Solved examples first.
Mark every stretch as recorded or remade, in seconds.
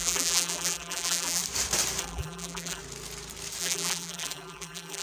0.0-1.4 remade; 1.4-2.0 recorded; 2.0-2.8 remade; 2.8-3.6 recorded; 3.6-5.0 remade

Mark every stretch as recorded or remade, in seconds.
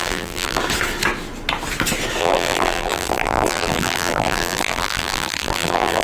0.0-0.6 remade; 0.6-2.2 recorded; 2.2-6.0 remade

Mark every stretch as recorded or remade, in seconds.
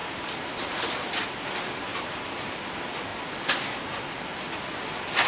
0.0-1.5 remade; 1.5-1.9 recorded; 1.9-2.6 remade; 2.6-5.3 recorded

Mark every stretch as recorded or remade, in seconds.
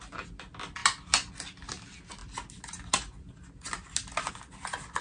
0.0-5.0 recorded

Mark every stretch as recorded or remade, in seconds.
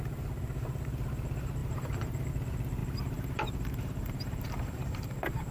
0.0-1.6 recorded; 1.6-2.3 remade; 2.3-2.8 recorded; 2.8-5.5 remade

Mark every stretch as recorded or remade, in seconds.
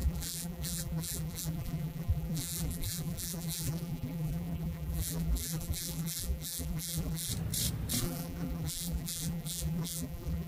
0.0-7.3 remade; 7.3-8.0 recorded; 8.0-10.5 remade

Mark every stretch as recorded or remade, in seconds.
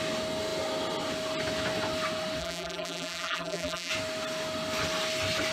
0.0-2.4 recorded; 2.4-3.9 remade; 3.9-5.5 recorded